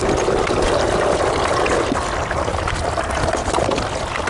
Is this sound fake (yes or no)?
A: no